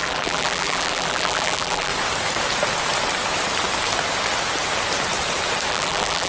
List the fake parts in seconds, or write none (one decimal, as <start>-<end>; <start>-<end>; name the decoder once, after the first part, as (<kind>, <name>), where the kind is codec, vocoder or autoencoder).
0.0-1.9 (vocoder, BigVGAN v2); 5.7-6.3